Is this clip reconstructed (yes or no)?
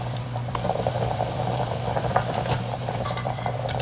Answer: yes